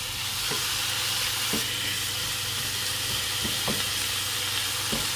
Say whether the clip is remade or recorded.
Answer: recorded